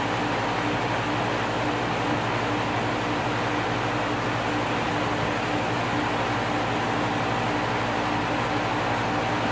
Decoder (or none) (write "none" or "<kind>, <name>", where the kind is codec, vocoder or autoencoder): none